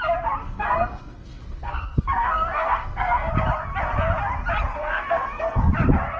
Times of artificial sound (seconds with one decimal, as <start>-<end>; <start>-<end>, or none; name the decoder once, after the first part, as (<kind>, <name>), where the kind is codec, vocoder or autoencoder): 0.4-3.3 (codec, SNAC); 4.7-5.7